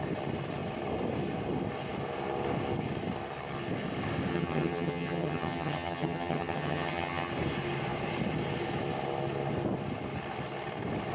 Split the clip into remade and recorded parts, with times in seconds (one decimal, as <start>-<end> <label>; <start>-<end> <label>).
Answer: 0.0-4.3 recorded; 4.3-7.3 remade; 7.3-11.1 recorded